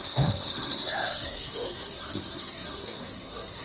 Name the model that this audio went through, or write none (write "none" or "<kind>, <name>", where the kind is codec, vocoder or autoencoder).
codec, SNAC